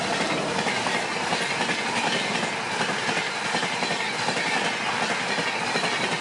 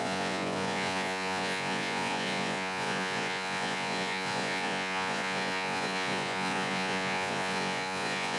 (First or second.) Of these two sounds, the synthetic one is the second